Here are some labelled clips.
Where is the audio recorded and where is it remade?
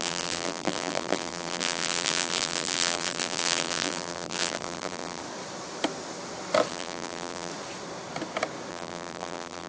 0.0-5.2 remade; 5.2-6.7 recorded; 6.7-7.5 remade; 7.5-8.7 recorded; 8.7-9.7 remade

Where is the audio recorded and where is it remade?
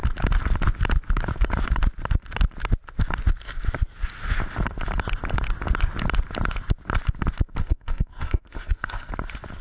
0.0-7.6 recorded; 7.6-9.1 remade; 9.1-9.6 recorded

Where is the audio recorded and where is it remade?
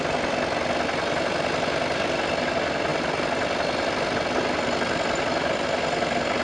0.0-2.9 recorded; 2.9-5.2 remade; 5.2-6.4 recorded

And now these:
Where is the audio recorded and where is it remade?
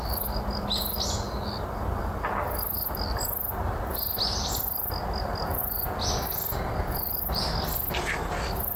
0.0-8.8 recorded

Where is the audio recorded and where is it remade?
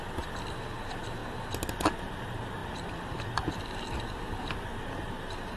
0.0-5.6 recorded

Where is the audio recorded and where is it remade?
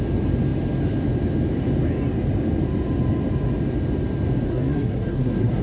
0.0-4.5 recorded; 4.5-5.6 remade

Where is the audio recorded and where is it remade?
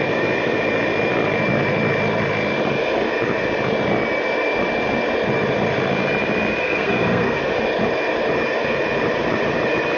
0.0-6.6 recorded; 6.6-7.4 remade; 7.4-10.0 recorded